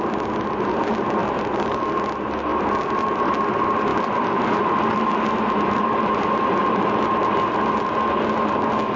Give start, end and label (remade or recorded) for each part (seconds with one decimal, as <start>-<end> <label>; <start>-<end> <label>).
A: 0.0-1.2 recorded; 1.2-1.8 remade; 1.8-3.9 recorded; 3.9-7.4 remade; 7.4-9.0 recorded